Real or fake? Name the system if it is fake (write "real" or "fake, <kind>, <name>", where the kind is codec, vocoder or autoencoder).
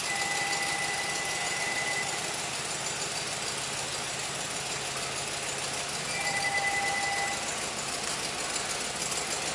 real